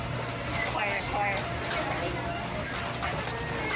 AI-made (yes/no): no